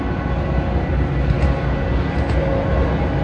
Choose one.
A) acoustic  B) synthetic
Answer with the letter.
A